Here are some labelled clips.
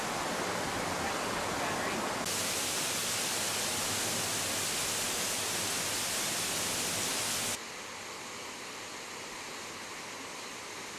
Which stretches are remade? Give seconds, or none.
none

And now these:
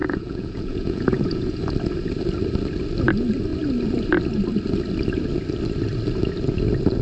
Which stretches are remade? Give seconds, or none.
0.0-1.6 (vocoder, Vocos)

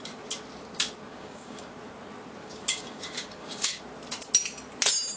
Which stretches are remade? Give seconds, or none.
1.1-1.7 (codec, DAC); 2.4-3.8

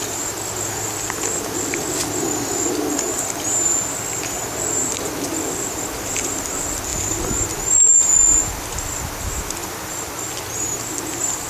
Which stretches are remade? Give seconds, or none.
9.6-10.3 (vocoder, BigVGAN v2)